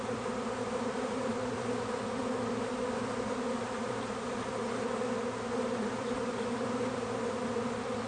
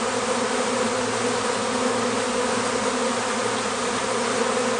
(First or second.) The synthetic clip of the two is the first